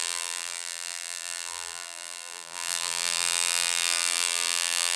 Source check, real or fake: fake